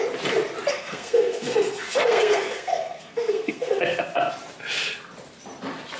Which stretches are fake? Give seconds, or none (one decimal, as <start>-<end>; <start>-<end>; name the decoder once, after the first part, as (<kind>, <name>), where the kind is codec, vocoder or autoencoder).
0.7-4.3 (codec, SNAC)

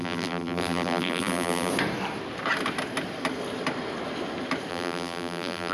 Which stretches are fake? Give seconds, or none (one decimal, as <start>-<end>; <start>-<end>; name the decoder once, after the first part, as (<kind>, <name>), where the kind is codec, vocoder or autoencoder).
0.0-1.7 (vocoder, BigVGAN v2); 4.7-5.7

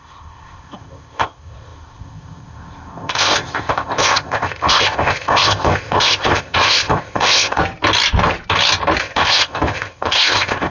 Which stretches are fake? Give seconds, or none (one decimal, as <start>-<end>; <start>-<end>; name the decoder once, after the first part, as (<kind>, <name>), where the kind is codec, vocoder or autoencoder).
0.0-7.6 (codec, ZipCodec); 9.0-10.7

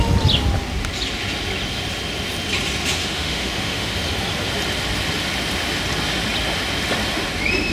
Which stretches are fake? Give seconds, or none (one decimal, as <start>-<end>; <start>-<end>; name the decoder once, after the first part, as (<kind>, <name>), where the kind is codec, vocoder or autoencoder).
2.9-4.0 (autoencoder, DAC-VAE)